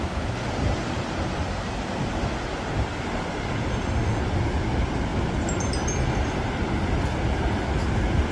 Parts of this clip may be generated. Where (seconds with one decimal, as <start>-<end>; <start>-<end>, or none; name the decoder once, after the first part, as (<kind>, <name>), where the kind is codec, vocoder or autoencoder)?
3.7-4.2 (autoencoder, DAC-VAE)

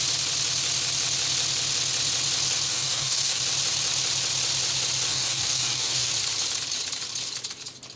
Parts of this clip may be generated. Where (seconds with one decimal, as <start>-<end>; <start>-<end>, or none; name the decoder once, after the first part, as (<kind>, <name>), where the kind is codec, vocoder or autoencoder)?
2.7-3.4 (codec, DAC); 5.1-6.1